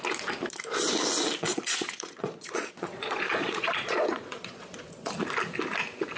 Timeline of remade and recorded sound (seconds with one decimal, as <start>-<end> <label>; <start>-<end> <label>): 0.0-1.5 recorded; 1.5-4.8 remade; 4.8-6.2 recorded